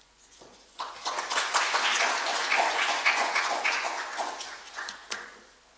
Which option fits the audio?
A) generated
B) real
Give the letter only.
A